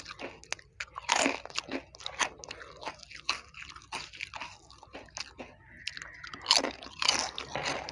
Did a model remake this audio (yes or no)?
no